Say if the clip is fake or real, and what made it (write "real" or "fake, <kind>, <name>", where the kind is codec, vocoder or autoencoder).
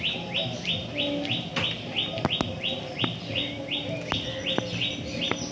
real